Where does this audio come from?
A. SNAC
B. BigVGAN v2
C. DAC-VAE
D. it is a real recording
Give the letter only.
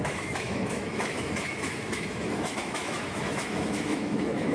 C